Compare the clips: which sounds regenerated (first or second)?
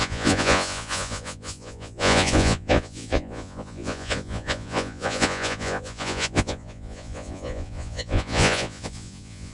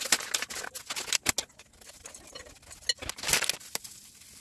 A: first